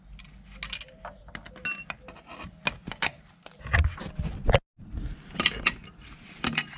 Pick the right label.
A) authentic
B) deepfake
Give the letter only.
A